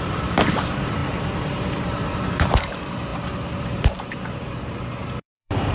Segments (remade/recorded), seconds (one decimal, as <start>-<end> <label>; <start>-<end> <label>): 0.0-5.7 remade